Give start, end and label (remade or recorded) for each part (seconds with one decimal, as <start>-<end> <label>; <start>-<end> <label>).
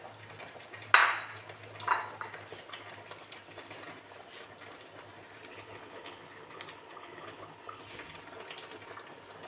0.0-5.5 recorded; 5.5-7.8 remade; 7.8-9.5 recorded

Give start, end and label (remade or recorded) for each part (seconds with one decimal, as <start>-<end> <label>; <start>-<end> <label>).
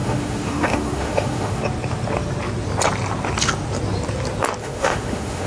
0.0-1.6 remade; 1.6-4.6 recorded; 4.6-5.5 remade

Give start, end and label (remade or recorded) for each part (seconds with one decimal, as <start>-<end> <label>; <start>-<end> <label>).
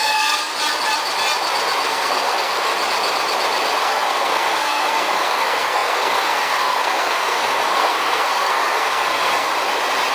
0.0-0.5 remade; 0.5-1.9 recorded; 1.9-2.7 remade; 2.7-3.8 recorded; 3.8-9.5 remade; 9.5-10.1 recorded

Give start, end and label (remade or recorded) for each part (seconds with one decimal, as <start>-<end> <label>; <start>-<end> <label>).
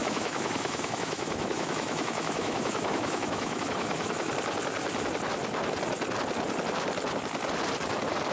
0.0-4.3 remade; 4.3-8.3 recorded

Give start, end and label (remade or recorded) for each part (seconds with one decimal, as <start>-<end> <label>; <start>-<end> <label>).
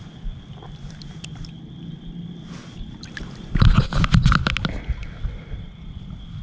0.0-6.4 recorded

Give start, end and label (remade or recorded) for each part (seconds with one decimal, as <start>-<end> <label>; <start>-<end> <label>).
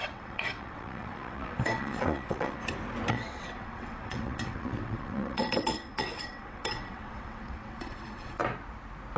0.0-2.6 remade; 2.6-3.1 recorded; 3.1-8.4 remade; 8.4-9.2 recorded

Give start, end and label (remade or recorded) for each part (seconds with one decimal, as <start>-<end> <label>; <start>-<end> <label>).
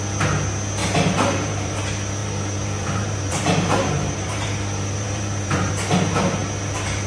0.0-0.8 recorded; 0.8-1.8 remade; 1.8-2.2 recorded; 2.2-5.7 remade; 5.7-7.1 recorded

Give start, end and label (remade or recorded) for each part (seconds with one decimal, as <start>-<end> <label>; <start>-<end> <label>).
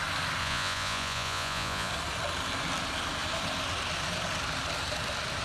0.0-0.4 recorded; 0.4-1.9 remade; 1.9-5.4 recorded